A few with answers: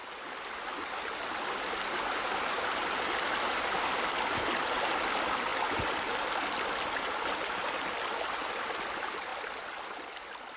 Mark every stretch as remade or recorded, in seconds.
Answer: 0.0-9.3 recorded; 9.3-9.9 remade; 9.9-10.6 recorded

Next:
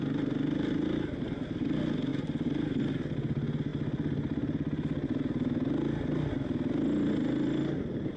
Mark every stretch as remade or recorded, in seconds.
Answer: 0.0-8.2 recorded

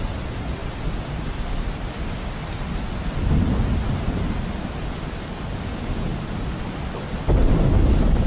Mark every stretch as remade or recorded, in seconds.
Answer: 0.0-6.1 recorded; 6.1-6.6 remade; 6.6-7.4 recorded; 7.4-8.3 remade

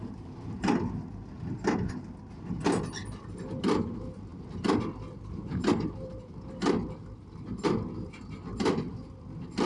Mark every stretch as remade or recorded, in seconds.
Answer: 0.0-0.7 remade; 0.7-9.7 recorded